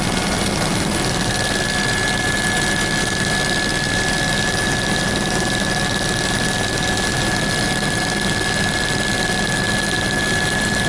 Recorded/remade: recorded